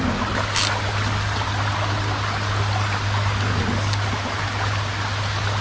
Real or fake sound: real